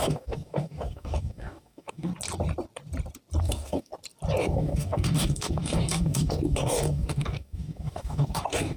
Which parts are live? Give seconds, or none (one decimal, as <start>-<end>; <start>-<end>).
2.1-3.4; 3.9-4.4